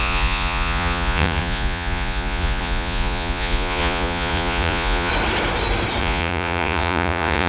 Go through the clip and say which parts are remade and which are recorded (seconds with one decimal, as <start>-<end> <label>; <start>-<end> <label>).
0.0-5.1 remade; 5.1-6.0 recorded; 6.0-7.5 remade

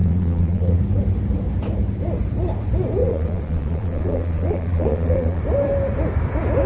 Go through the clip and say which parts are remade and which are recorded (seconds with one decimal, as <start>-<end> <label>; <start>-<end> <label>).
0.0-0.8 remade; 0.8-3.0 recorded; 3.0-5.4 remade; 5.4-6.7 recorded

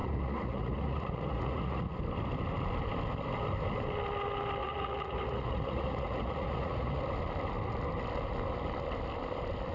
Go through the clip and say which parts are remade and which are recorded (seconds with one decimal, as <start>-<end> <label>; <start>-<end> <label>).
0.0-2.0 remade; 2.0-4.6 recorded; 4.6-7.0 remade; 7.0-9.7 recorded

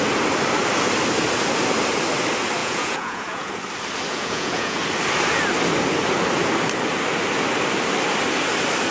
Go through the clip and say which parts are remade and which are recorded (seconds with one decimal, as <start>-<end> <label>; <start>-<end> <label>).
0.0-2.6 recorded; 2.6-3.5 remade; 3.5-4.1 recorded; 4.1-4.8 remade; 4.8-8.9 recorded

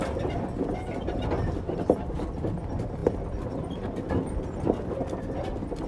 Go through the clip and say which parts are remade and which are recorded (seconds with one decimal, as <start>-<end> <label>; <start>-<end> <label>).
0.0-5.9 recorded